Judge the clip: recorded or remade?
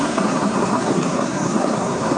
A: remade